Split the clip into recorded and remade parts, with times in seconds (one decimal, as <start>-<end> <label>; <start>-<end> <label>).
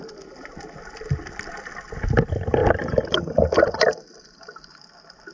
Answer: 0.0-5.3 recorded